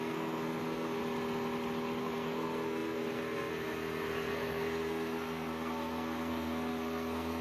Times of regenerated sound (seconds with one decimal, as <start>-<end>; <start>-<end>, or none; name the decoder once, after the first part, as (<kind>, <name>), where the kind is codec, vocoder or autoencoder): 0.0-1.0 (codec, SNAC); 2.0-7.4